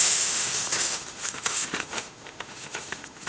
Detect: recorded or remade remade